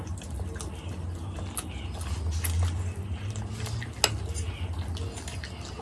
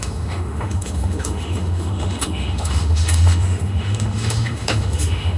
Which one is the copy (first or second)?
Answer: second